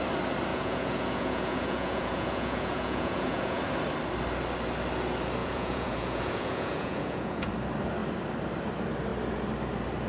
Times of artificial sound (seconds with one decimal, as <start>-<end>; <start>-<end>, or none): 0.5-3.6; 5.4-7.5